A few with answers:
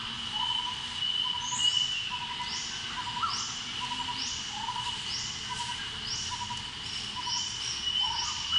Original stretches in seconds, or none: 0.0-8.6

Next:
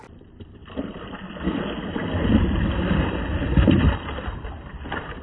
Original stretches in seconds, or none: 0.0-2.3; 4.7-5.2

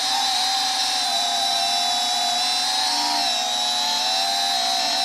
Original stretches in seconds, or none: 1.6-5.0

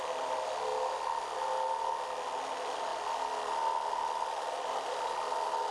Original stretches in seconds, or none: 0.0-5.7

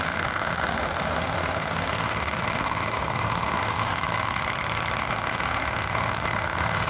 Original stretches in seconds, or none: 4.4-5.0

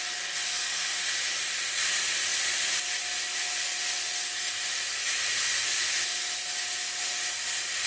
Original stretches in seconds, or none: 0.0-0.5; 1.0-7.9